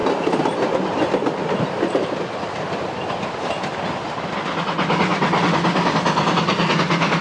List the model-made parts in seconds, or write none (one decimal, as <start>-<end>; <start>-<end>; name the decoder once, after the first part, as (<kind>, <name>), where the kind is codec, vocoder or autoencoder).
none